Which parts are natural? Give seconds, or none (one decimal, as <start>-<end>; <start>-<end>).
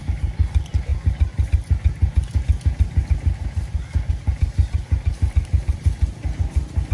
0.9-4.1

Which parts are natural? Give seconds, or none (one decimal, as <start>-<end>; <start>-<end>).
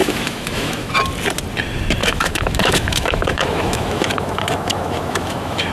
0.9-2.0